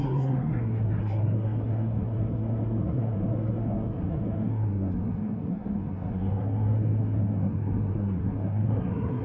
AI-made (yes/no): yes